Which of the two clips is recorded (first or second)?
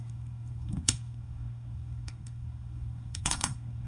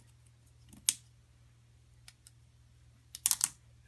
second